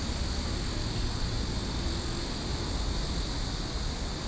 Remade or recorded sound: recorded